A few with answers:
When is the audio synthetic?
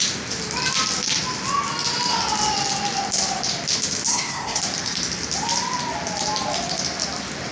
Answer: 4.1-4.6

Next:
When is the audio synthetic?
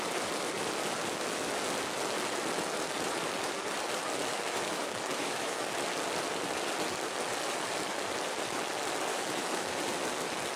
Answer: 4.3-5.6; 9.1-9.8